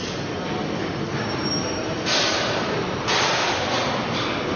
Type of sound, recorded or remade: recorded